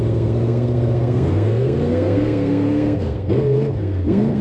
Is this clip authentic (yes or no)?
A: no